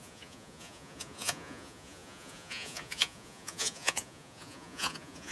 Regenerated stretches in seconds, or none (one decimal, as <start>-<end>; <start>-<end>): 0.0-5.3